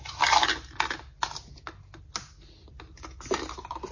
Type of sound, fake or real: real